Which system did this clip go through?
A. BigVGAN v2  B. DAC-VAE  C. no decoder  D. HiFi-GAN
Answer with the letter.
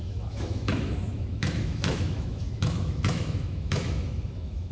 B